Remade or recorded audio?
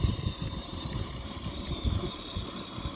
recorded